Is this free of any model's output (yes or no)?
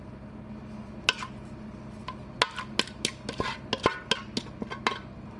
yes